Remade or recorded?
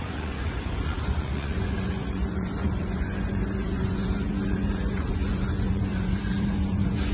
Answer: remade